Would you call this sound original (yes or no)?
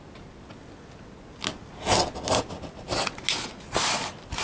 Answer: yes